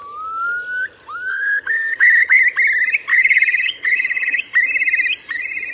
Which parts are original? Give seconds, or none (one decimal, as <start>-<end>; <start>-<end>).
0.0-1.3; 2.4-3.1; 4.4-5.7